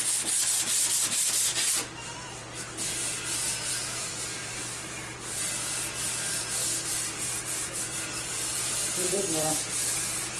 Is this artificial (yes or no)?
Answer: yes